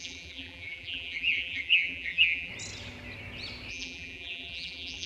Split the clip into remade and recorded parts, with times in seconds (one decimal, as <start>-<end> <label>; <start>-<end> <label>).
0.0-2.5 remade; 2.5-3.7 recorded; 3.7-5.1 remade